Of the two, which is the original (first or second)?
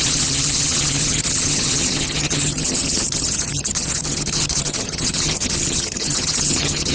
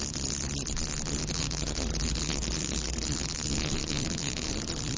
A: second